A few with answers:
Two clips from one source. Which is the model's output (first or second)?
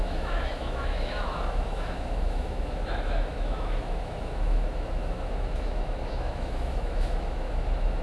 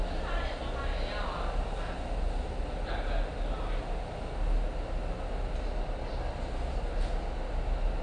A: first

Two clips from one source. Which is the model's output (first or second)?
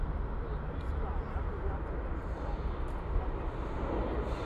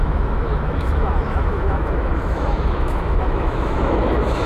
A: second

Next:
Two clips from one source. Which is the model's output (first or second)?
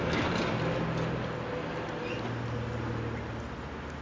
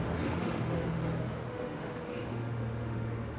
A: second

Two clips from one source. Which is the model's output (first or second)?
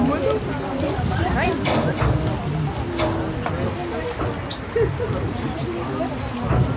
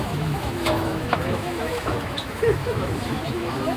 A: second